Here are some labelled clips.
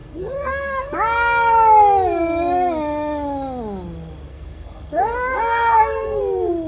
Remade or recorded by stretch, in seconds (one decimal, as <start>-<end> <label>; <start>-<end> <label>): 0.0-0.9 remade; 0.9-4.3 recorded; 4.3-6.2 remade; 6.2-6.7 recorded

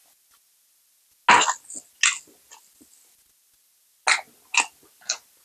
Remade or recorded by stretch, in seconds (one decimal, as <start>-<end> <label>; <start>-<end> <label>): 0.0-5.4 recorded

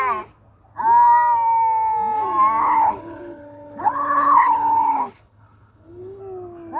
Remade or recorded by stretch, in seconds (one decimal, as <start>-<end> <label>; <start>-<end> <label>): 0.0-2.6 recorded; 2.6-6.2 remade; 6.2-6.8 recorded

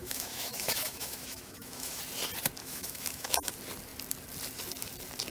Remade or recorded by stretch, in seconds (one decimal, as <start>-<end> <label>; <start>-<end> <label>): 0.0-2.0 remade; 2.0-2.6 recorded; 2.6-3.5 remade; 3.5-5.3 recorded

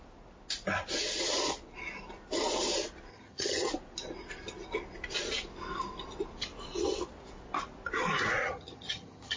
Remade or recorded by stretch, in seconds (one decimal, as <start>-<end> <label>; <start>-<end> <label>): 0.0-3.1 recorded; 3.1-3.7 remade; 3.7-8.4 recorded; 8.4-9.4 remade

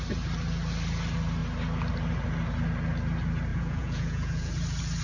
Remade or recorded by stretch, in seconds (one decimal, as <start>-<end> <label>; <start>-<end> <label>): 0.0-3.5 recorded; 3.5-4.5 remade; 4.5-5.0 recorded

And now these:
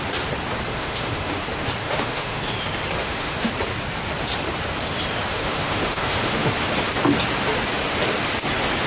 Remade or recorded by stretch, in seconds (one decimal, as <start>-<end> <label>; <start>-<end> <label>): 0.0-0.7 recorded; 0.7-1.3 remade; 1.3-1.8 recorded; 1.8-2.4 remade; 2.4-3.0 recorded; 3.0-3.5 remade; 3.5-5.3 recorded; 5.3-6.5 remade; 6.5-8.9 recorded